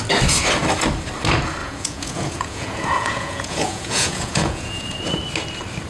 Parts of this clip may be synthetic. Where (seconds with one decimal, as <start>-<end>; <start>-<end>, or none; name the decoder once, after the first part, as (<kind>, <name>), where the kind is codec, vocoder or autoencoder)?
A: 1.6-5.0 (vocoder, Vocos)